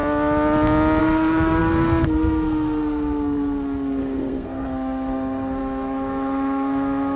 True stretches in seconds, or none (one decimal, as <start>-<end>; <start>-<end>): 0.0-1.0